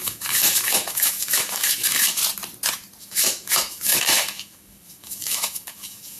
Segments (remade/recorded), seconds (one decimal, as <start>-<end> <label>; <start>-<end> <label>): 0.0-2.2 remade; 2.2-3.0 recorded; 3.0-6.2 remade